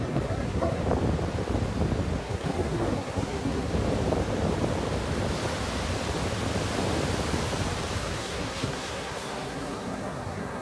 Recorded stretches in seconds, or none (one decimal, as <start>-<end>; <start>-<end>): 0.8-2.2; 3.7-8.0